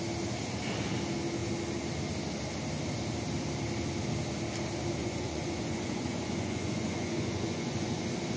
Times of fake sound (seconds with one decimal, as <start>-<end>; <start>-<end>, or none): 5.0-8.0